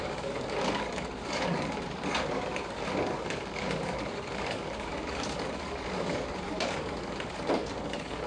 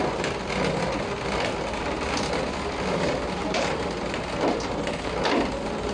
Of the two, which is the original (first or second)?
second